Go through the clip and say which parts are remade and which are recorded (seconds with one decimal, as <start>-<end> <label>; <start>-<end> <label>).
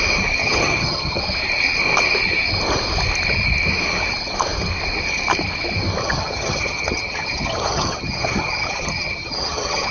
0.0-0.4 recorded; 0.4-1.2 remade; 1.2-6.0 recorded; 6.0-9.9 remade